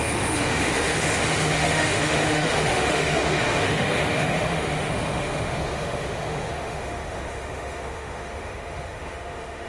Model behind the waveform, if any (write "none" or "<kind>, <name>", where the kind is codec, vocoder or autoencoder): autoencoder, DAC-VAE